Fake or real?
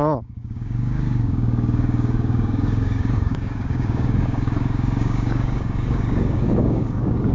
fake